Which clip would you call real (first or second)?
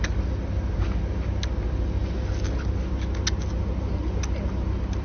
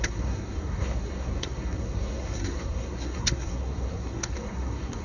first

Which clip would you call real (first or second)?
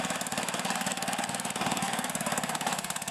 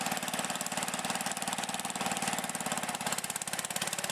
second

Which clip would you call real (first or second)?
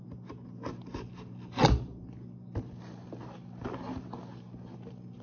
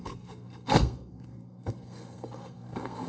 first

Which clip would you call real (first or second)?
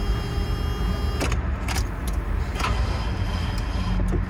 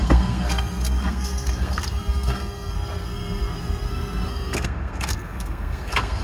first